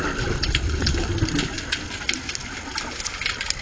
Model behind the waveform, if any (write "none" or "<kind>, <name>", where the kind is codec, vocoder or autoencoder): none